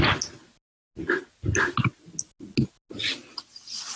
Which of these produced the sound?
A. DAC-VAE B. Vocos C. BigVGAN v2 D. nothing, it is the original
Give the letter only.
D